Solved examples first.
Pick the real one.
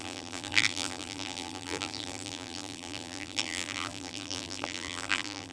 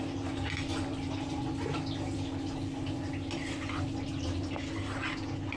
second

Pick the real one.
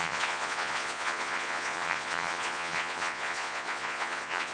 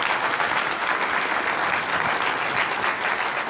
second